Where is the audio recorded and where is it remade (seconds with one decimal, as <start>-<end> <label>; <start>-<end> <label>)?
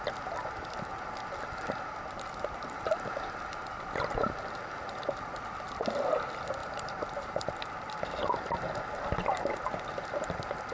0.0-6.6 recorded; 6.6-7.6 remade; 7.6-10.7 recorded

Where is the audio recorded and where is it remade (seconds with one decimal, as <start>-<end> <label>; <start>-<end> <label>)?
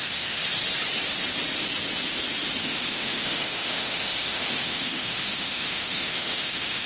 0.0-0.4 remade; 0.4-2.6 recorded; 2.6-6.9 remade